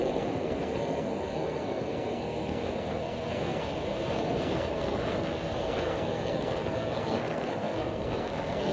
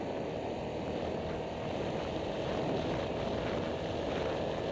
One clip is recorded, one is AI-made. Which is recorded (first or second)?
second